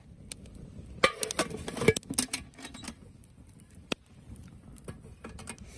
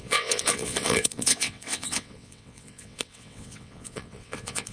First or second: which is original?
first